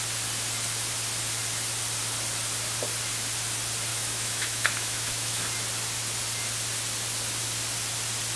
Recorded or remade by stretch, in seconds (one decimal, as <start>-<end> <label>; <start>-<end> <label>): 0.0-3.9 recorded; 3.9-5.4 remade; 5.4-8.4 recorded